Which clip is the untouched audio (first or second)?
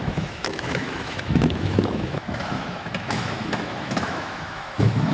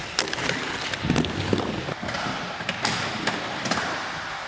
second